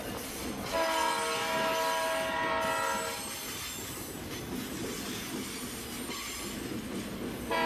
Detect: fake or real real